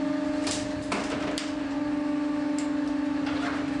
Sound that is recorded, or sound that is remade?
recorded